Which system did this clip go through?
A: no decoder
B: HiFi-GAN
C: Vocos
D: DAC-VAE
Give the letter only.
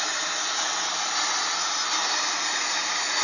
A